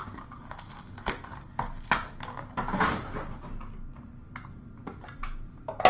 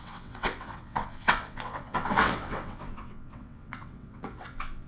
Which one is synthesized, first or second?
second